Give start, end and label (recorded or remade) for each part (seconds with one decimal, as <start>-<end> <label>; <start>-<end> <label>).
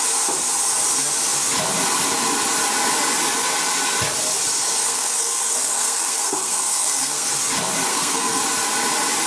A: 0.0-4.8 recorded; 4.8-7.3 remade; 7.3-7.9 recorded; 7.9-8.4 remade; 8.4-9.3 recorded